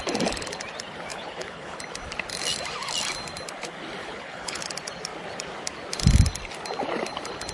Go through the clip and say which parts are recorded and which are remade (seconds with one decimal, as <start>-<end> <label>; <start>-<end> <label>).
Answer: 0.0-1.1 recorded; 1.1-1.8 remade; 1.8-4.0 recorded; 4.0-4.6 remade; 4.6-7.5 recorded